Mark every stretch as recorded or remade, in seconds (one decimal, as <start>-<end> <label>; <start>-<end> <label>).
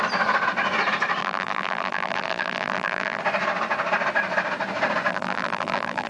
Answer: 0.0-1.2 recorded; 1.2-3.2 remade; 3.2-5.1 recorded; 5.1-6.1 remade